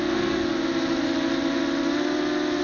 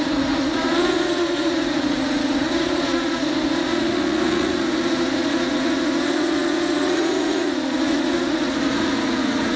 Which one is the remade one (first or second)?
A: second